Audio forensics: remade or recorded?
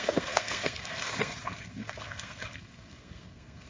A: remade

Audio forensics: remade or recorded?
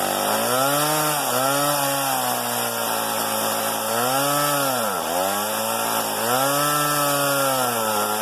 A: recorded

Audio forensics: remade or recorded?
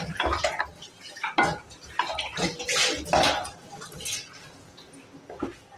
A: recorded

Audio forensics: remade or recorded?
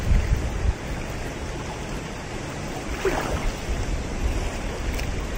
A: remade